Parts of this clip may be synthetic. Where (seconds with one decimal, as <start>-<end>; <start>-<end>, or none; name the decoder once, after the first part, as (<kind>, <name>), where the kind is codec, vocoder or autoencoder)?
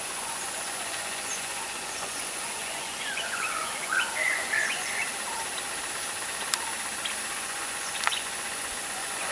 0.0-5.0 (vocoder, Vocos); 7.3-9.3